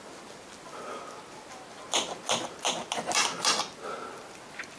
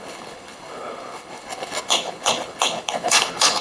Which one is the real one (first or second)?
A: first